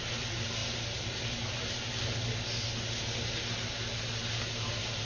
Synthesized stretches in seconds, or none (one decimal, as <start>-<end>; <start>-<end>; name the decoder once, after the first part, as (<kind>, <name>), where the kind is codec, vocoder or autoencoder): none

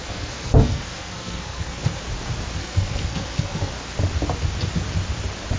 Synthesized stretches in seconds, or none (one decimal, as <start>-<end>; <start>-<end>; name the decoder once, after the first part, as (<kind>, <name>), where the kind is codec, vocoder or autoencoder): 0.0-2.0 (codec, SNAC); 2.6-3.7